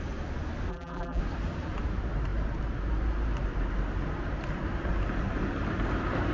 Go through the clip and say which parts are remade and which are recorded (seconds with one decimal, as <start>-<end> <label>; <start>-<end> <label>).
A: 0.0-0.7 recorded; 0.7-1.2 remade; 1.2-6.3 recorded